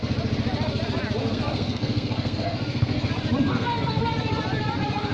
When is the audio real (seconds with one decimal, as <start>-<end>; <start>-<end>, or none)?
0.0-1.2; 3.1-3.5; 4.1-5.1